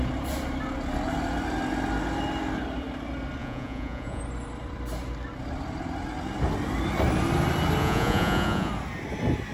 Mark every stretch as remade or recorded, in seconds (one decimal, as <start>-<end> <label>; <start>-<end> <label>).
0.0-3.4 recorded; 3.4-4.2 remade; 4.2-7.8 recorded; 7.8-8.7 remade; 8.7-9.5 recorded